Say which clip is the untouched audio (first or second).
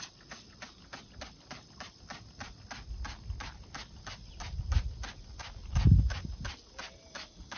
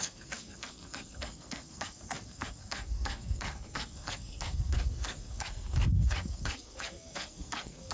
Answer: first